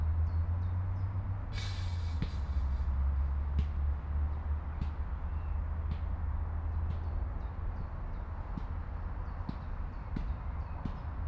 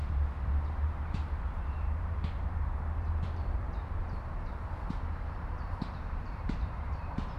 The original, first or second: first